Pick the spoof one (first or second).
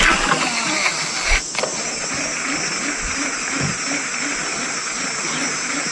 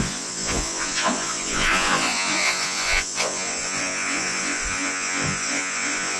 second